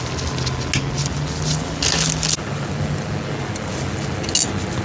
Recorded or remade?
recorded